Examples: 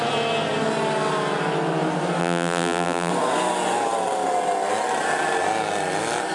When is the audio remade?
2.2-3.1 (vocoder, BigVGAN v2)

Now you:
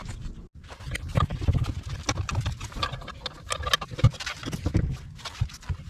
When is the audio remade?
none

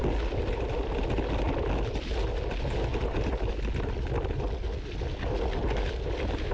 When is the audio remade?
2.9-3.5 (vocoder, BigVGAN v2)

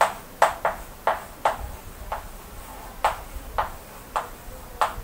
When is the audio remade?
1.1-2.4 (vocoder, BigVGAN v2)